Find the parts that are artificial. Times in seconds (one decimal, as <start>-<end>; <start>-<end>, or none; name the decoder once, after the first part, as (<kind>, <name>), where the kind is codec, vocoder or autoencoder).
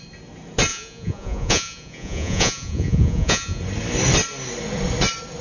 0.7-3.6 (vocoder, Vocos)